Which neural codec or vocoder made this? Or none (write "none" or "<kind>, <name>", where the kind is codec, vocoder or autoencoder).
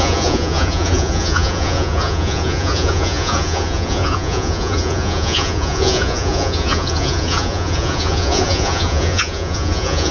vocoder, Vocos